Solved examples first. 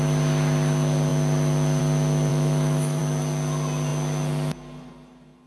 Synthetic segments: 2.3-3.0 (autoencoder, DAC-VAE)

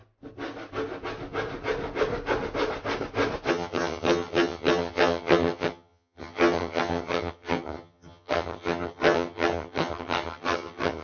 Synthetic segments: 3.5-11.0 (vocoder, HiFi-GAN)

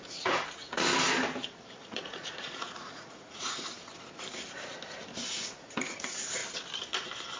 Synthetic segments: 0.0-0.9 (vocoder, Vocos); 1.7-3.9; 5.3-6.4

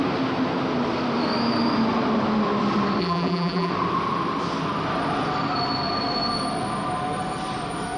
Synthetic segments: 3.0-3.7 (vocoder, BigVGAN v2)

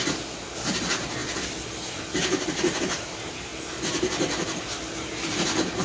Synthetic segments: 0.0-1.2 (vocoder, BigVGAN v2); 2.5-3.5; 4.6-5.8

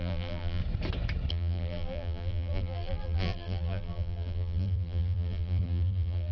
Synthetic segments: 0.0-0.6 (vocoder, BigVGAN v2); 1.3-6.3

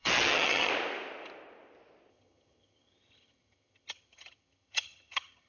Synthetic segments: 0.0-0.7 (vocoder, HiFi-GAN); 2.1-5.5